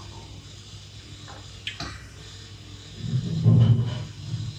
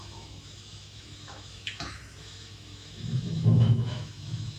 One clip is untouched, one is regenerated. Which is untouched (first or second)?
first